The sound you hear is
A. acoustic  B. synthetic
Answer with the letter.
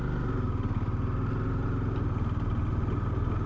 A